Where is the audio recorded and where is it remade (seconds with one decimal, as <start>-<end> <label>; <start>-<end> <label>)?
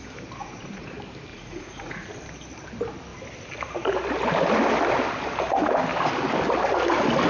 0.0-0.4 recorded; 0.4-0.9 remade; 0.9-1.3 recorded; 1.3-2.1 remade; 2.1-7.3 recorded